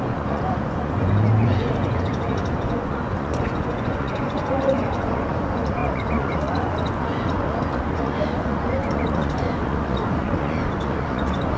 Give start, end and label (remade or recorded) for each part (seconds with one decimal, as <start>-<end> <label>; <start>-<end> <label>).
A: 0.0-11.6 remade